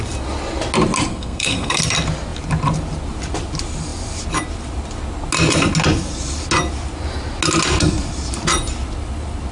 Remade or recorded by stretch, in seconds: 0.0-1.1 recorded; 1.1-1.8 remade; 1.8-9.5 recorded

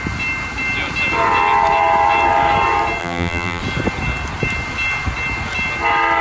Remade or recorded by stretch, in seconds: 0.0-3.0 recorded; 3.0-3.6 remade; 3.6-6.2 recorded

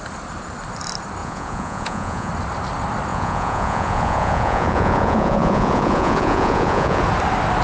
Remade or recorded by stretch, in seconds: 0.0-1.2 recorded; 1.2-2.3 remade; 2.3-3.1 recorded; 3.1-7.0 remade; 7.0-7.6 recorded

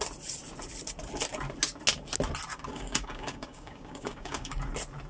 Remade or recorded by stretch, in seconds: 0.0-2.5 recorded; 2.5-4.6 remade; 4.6-5.1 recorded

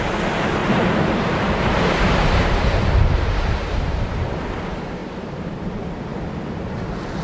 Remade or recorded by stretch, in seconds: 0.0-0.6 recorded; 0.6-4.4 remade; 4.4-5.0 recorded; 5.0-6.1 remade; 6.1-7.2 recorded